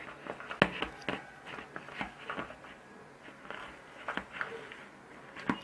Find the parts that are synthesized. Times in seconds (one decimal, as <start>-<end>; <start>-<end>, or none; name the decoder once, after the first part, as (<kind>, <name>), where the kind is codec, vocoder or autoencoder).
none